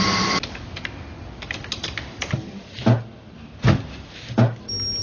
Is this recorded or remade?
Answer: recorded